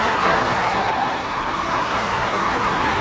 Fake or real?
fake